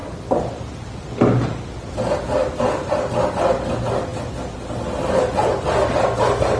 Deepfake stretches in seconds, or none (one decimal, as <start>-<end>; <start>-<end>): none